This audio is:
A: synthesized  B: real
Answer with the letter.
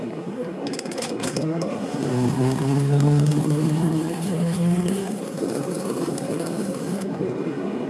A